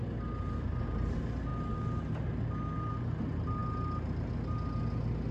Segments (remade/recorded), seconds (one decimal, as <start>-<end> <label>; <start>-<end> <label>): 0.0-5.3 recorded